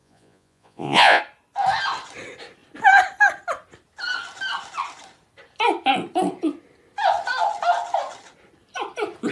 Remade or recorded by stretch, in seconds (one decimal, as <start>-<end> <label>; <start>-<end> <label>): 0.0-1.2 remade; 1.2-9.3 recorded